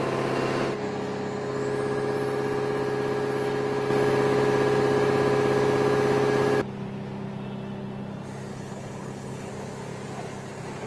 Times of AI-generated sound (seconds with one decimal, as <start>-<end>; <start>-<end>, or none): 8.5-9.5